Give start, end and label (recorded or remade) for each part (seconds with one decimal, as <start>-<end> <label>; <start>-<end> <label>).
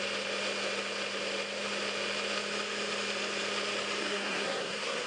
0.0-4.0 recorded; 4.0-5.1 remade